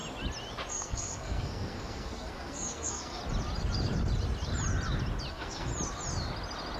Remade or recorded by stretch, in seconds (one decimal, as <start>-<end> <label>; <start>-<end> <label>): 0.0-0.7 recorded; 0.7-3.2 remade; 3.2-5.3 recorded; 5.3-5.7 remade; 5.7-6.8 recorded